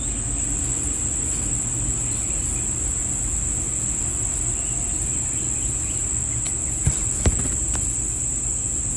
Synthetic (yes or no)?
no